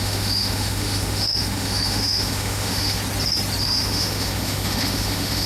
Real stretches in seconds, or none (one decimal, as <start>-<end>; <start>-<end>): 3.0-3.6